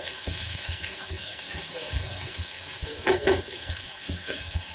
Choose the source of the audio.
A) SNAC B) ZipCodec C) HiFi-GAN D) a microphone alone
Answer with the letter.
A